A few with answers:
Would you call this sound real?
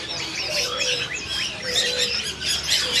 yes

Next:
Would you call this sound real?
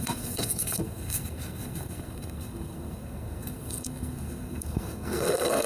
no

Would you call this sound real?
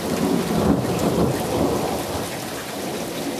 yes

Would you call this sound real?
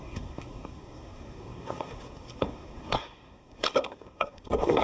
no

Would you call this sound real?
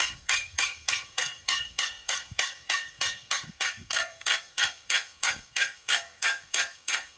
no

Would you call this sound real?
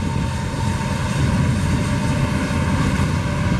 yes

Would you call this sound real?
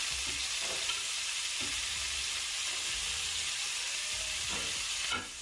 yes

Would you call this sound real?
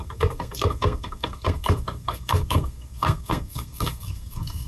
no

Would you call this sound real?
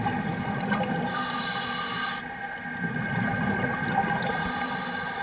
yes